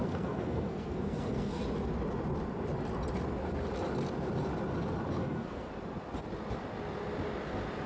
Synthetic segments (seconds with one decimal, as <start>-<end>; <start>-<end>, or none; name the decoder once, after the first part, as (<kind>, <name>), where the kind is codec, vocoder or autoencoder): 0.0-1.6 (codec, SNAC); 5.2-5.7